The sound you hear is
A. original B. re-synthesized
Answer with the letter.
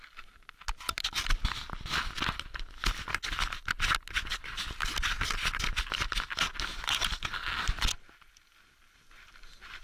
A